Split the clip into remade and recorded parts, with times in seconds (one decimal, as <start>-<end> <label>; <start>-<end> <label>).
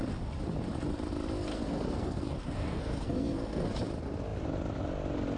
0.0-1.5 recorded; 1.5-3.7 remade; 3.7-5.4 recorded